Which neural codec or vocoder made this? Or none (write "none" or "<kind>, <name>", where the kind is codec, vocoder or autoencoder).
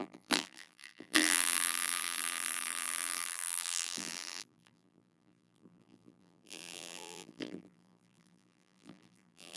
vocoder, BigVGAN v2